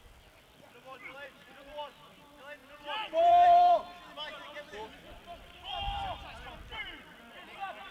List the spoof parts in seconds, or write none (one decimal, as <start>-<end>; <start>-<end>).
0.0-7.9